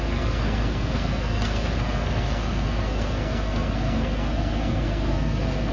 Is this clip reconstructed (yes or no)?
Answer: yes